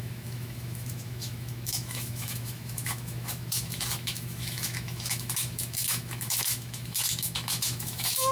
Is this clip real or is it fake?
fake